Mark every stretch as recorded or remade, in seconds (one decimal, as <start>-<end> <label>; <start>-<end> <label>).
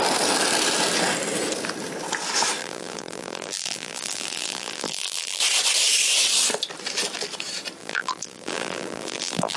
0.0-2.6 recorded; 2.6-5.4 remade; 5.4-7.8 recorded; 7.8-9.6 remade